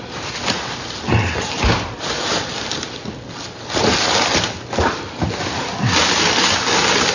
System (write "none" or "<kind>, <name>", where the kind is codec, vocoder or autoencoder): none